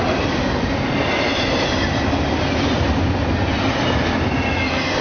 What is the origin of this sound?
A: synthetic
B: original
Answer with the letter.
B